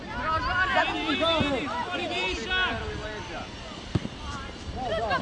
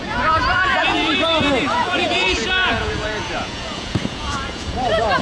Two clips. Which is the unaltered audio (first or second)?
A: first